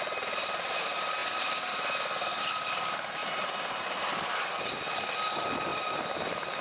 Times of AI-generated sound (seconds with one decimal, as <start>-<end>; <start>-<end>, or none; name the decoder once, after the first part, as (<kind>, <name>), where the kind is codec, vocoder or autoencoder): 5.7-6.6 (vocoder, BigVGAN v2)